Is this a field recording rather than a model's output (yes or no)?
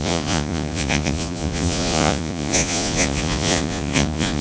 no